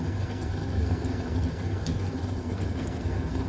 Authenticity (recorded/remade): remade